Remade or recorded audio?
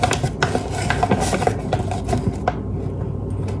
recorded